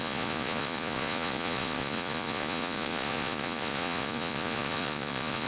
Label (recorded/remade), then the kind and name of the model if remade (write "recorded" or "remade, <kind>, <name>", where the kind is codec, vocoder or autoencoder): remade, vocoder, Vocos